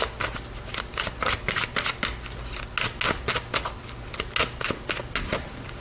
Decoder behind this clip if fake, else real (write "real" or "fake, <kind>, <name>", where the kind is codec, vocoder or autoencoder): real